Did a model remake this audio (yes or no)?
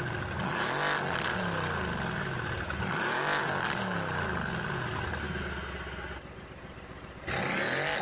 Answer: no